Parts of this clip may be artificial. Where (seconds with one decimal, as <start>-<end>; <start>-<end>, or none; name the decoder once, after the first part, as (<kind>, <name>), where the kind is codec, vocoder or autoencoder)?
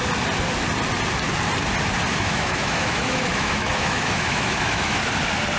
2.1-5.0 (autoencoder, DAC-VAE)